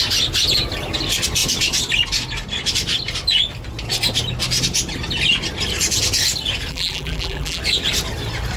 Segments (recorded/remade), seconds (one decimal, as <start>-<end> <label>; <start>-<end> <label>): 0.0-6.7 recorded; 6.7-7.6 remade; 7.6-8.6 recorded

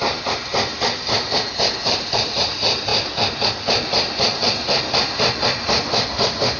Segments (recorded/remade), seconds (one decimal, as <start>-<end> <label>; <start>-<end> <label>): 0.0-1.8 recorded; 1.8-2.4 remade; 2.4-6.6 recorded

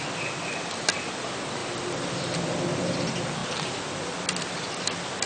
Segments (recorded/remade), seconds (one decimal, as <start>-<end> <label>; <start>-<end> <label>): 0.0-1.6 recorded; 1.6-2.4 remade; 2.4-5.3 recorded

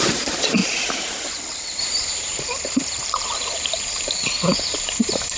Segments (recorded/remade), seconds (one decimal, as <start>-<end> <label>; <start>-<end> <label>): 0.0-0.6 remade; 0.6-1.8 recorded; 1.8-5.4 remade

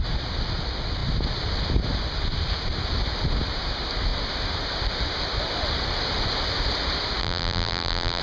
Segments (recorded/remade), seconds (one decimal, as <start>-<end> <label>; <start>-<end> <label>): 0.0-7.2 recorded; 7.2-8.2 remade